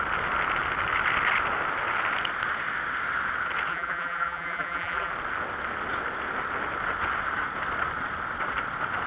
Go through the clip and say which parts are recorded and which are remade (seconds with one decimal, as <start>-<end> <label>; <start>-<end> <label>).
0.0-3.7 recorded; 3.7-5.1 remade; 5.1-9.1 recorded